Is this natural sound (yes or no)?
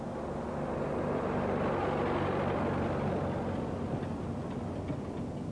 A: yes